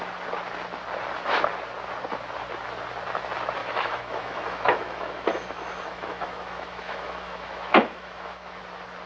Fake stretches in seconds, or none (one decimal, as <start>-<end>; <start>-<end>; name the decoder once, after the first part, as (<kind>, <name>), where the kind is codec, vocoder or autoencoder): 3.6-8.6 (autoencoder, DAC-VAE)